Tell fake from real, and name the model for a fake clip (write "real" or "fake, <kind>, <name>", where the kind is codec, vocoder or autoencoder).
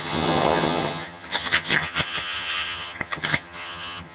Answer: fake, vocoder, HiFi-GAN